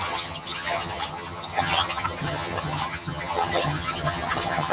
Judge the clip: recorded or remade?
remade